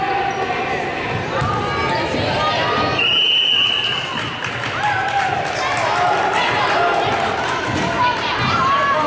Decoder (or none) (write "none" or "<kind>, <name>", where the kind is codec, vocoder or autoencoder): none